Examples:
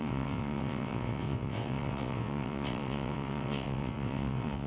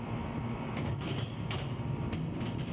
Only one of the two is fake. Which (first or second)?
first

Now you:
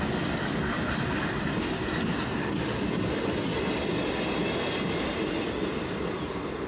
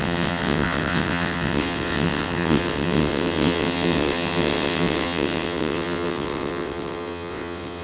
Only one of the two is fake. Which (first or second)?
second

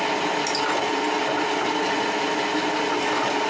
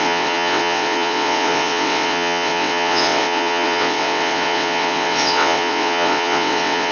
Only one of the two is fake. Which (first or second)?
second